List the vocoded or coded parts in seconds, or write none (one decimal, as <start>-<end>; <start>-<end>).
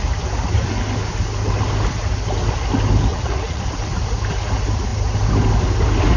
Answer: 3.1-3.6